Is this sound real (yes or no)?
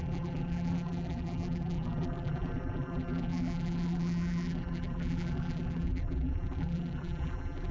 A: no